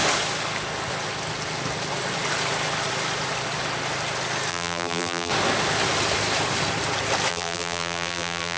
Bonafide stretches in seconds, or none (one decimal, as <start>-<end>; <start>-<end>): 0.0-4.5; 5.3-7.3